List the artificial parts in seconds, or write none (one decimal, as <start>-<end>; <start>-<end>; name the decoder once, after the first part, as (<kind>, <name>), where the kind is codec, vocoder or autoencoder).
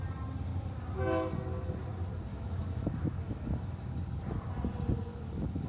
2.3-4.0 (autoencoder, DAC-VAE); 5.1-5.7